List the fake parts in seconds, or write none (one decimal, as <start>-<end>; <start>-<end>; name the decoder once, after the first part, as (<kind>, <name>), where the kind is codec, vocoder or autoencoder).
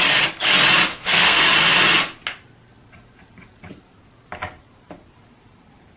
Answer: 0.9-1.4 (codec, SNAC)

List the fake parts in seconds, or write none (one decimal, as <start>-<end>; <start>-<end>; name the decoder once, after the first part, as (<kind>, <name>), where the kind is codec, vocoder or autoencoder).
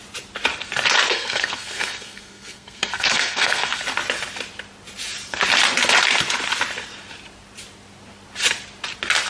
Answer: 1.1-3.8 (codec, SNAC)